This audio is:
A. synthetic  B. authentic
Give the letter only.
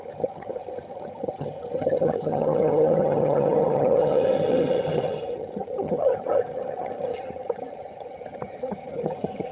A